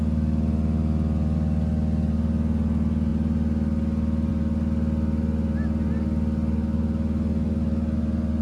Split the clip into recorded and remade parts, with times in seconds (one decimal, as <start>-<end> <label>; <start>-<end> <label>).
0.0-8.4 recorded